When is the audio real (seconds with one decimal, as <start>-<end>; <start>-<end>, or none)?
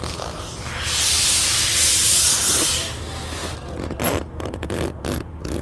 0.0-5.6